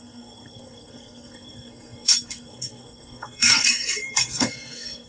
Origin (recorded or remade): remade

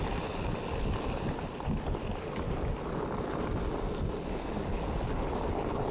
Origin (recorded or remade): recorded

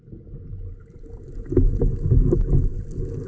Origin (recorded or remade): recorded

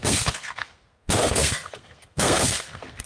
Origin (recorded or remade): remade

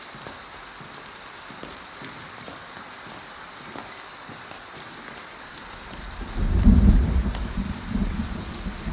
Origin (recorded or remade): recorded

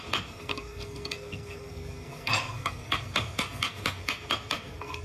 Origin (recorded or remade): remade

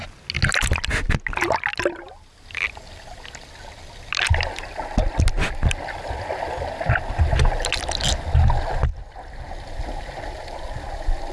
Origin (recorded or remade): recorded